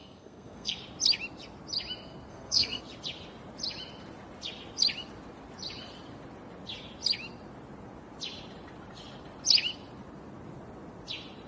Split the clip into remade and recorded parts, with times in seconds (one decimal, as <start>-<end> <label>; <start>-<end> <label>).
0.0-0.8 remade; 0.8-2.3 recorded; 2.3-2.8 remade; 2.8-11.5 recorded